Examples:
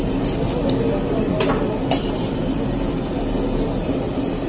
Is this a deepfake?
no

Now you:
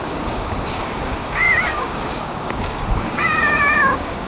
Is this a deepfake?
yes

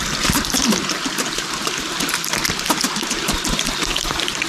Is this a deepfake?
no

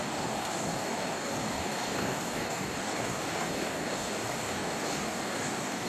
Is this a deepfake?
yes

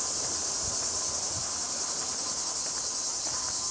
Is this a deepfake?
no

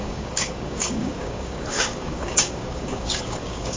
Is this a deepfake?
yes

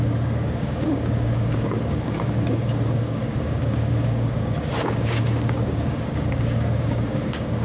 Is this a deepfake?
yes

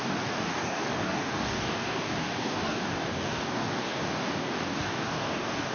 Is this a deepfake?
yes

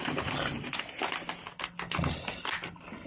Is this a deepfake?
no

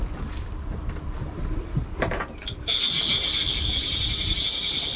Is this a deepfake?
no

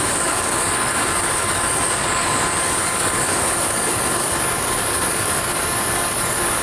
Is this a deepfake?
yes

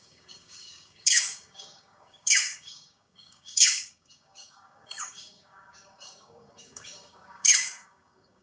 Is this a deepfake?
yes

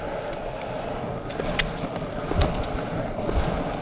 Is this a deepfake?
no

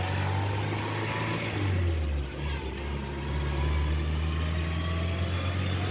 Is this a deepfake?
no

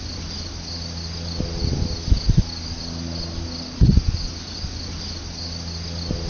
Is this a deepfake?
no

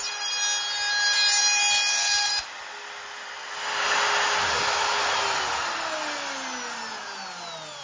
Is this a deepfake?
no